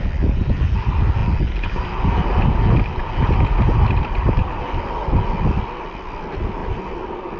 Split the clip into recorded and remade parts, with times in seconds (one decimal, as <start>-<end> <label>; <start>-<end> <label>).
0.0-1.2 remade; 1.2-5.6 recorded; 5.6-7.4 remade